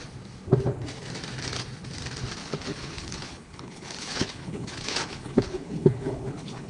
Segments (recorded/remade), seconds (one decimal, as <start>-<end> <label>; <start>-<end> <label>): 0.0-2.4 recorded; 2.4-6.7 remade